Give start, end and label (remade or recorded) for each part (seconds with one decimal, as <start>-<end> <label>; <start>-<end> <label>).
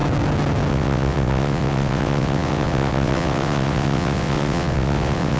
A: 0.0-0.7 recorded; 0.7-5.4 remade